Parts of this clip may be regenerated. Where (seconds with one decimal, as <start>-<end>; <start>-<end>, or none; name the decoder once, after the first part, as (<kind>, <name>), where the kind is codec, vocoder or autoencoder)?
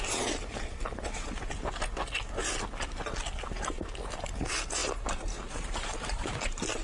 4.8-6.8 (vocoder, BigVGAN v2)